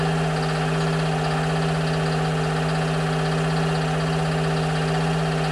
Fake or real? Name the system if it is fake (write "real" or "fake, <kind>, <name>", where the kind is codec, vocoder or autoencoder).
real